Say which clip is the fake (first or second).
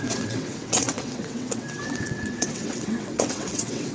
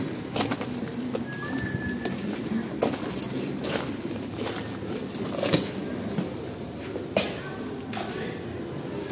first